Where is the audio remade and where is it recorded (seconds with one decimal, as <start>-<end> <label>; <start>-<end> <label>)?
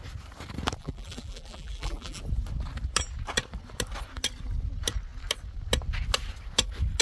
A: 0.0-0.8 recorded; 0.8-2.2 remade; 2.2-7.0 recorded